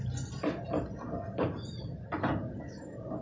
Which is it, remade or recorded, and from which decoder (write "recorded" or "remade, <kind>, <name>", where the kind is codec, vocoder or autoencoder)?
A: recorded